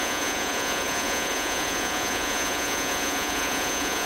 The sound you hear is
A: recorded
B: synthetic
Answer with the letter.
B